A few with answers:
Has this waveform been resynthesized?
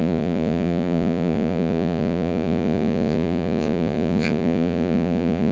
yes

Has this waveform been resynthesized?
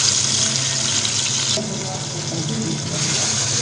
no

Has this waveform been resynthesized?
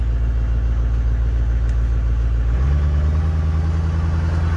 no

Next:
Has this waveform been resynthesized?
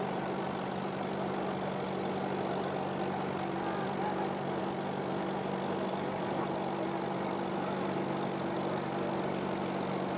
no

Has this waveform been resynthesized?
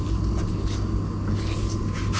no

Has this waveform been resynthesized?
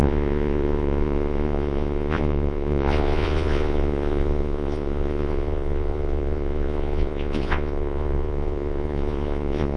yes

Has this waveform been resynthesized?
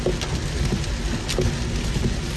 no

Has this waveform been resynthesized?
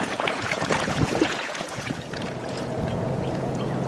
yes